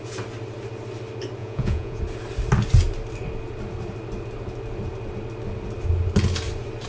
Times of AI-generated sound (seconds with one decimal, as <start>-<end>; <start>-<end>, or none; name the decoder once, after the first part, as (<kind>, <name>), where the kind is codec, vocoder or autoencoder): 1.4-2.0 (vocoder, Vocos)